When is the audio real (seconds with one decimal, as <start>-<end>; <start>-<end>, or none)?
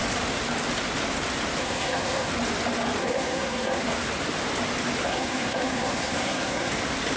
0.0-1.6; 2.3-3.0; 3.8-5.1; 6.7-7.2